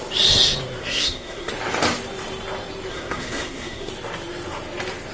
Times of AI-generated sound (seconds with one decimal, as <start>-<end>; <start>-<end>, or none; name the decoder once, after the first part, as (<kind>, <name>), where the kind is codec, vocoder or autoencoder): 0.8-1.5 (codec, SNAC); 2.9-3.9